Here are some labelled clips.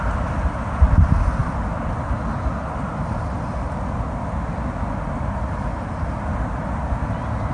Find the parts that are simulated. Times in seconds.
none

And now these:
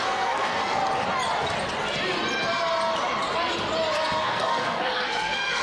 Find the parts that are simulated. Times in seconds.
0.0-0.8 (codec, SNAC); 4.2-5.6

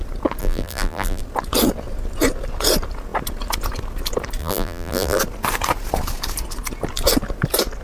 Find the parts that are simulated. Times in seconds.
0.4-1.2 (vocoder, BigVGAN v2); 4.4-5.2